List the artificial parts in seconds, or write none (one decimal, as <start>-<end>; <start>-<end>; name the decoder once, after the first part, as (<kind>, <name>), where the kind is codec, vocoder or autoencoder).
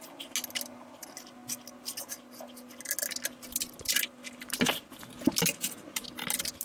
none